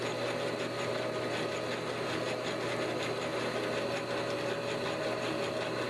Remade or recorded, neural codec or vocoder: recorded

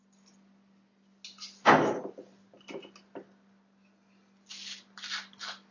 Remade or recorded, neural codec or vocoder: recorded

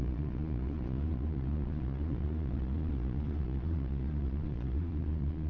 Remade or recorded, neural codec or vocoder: remade, vocoder, Vocos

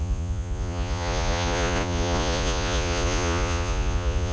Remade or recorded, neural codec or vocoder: remade, vocoder, Vocos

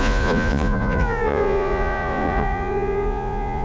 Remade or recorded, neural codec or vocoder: remade, vocoder, Vocos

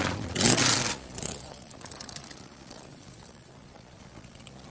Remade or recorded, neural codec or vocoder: remade, vocoder, Vocos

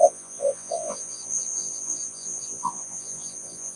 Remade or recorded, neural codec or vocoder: remade, vocoder, Vocos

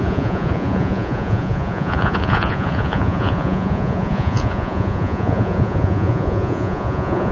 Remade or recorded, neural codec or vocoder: remade, vocoder, Vocos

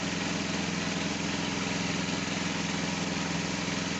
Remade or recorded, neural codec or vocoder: recorded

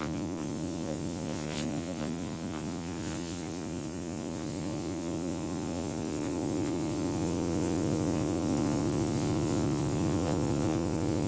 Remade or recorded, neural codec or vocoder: remade, vocoder, Vocos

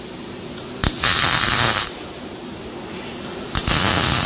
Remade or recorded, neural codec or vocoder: recorded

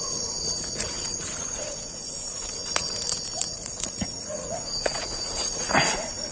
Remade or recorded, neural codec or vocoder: remade, vocoder, Vocos